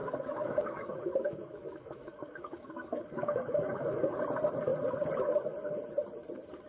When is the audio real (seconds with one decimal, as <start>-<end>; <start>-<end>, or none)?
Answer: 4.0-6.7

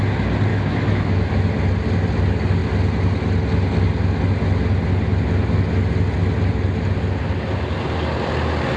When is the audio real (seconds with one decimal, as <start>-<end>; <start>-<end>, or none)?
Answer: 0.0-0.5; 1.3-8.8

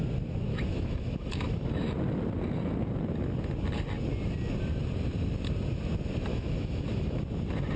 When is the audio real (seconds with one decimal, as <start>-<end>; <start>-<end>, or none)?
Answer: 0.0-0.5; 1.9-6.3; 7.2-7.8

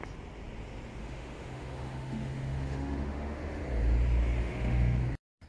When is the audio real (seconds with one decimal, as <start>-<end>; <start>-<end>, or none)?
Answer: 0.0-1.0; 3.6-4.4; 5.0-5.5

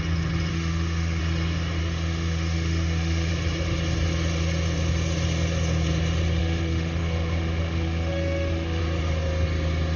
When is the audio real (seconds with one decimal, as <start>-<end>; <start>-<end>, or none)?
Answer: 0.0-0.5; 1.2-1.8; 3.3-6.4; 8.8-10.0

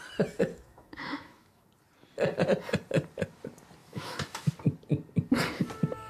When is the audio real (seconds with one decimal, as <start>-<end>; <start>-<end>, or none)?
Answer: 0.0-0.5; 1.7-3.8; 4.5-6.1

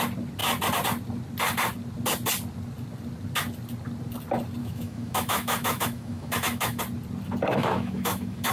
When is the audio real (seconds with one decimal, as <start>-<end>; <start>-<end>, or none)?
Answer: 0.0-4.6; 6.8-7.5

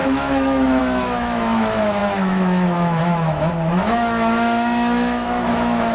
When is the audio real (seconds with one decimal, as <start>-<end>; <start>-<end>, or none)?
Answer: none